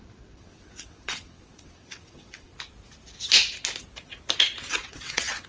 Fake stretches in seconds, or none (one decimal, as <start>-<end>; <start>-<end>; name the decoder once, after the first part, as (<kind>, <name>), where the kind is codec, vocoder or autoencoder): 0.0-2.5 (vocoder, WaveNeXt); 4.7-5.5